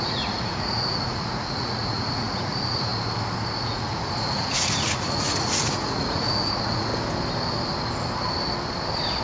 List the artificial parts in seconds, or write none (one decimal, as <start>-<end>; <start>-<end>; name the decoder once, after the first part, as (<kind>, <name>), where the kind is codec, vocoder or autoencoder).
0.0-2.9 (vocoder, Vocos); 3.6-6.9